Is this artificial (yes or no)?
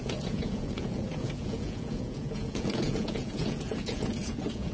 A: yes